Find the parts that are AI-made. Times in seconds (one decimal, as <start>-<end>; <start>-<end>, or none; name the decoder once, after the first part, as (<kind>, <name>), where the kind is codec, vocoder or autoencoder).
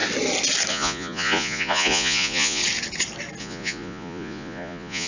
0.7-2.6 (vocoder, Vocos); 3.4-5.1